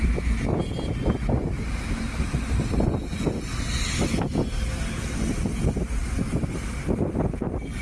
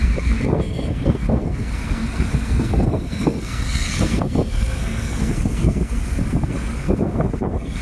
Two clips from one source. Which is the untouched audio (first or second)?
first